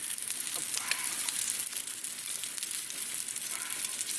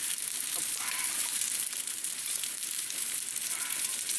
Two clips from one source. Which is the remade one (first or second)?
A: second